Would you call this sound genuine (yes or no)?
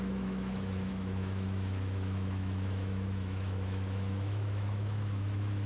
no